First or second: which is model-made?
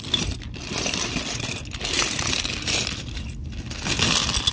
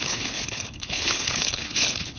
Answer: second